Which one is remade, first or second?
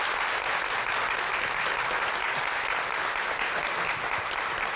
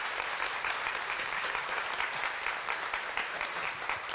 second